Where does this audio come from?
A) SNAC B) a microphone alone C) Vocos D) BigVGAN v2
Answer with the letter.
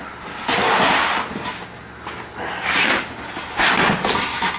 B